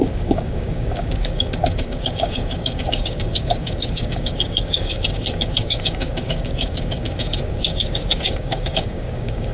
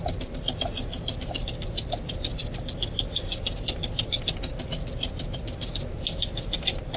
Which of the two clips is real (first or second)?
second